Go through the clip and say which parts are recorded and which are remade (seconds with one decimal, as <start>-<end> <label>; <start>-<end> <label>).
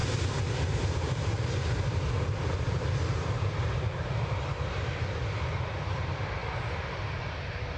0.0-5.2 remade; 5.2-5.9 recorded; 5.9-6.4 remade; 6.4-7.8 recorded